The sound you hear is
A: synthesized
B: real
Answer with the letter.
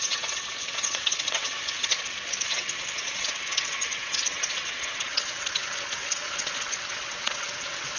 A